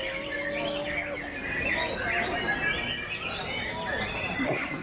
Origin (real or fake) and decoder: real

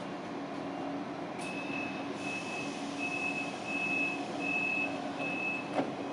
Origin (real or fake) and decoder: real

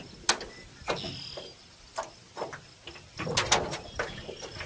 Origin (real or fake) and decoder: real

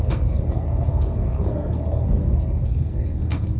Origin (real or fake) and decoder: fake, codec, SNAC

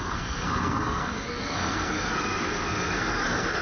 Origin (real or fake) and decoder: fake, codec, SNAC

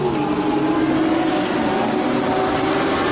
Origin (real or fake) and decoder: real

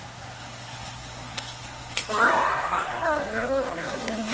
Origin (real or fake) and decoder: fake, codec, SNAC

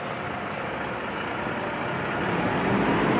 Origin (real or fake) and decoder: real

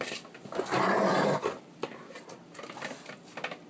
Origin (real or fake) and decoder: real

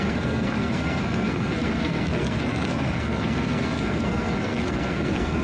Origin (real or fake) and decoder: fake, codec, SNAC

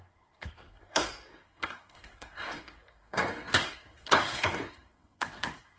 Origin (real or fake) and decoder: fake, codec, SNAC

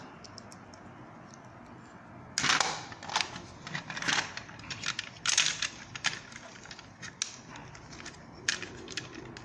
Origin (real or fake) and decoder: real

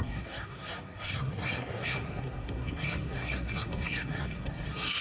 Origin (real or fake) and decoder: fake, codec, SNAC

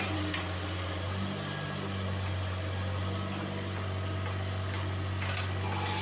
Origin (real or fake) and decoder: real